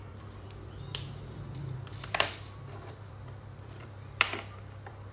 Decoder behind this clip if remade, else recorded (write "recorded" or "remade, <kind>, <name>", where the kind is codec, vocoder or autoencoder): remade, vocoder, BigVGAN v2